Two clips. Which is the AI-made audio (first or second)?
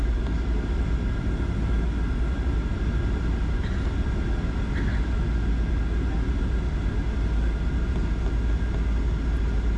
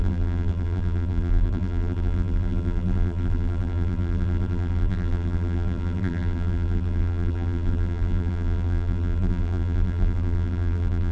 second